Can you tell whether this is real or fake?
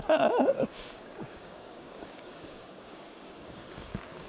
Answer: fake